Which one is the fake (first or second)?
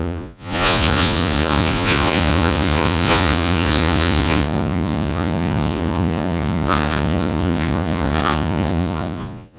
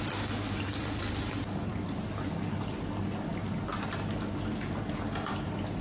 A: first